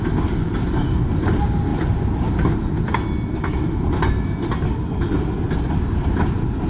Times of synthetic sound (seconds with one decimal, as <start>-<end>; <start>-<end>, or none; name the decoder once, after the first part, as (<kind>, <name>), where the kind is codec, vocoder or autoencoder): none